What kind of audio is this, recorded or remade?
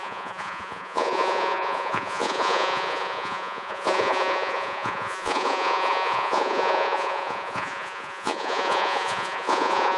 remade